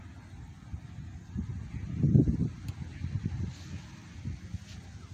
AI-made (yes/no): no